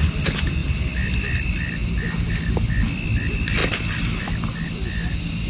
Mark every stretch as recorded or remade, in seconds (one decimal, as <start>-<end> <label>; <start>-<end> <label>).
0.0-5.5 recorded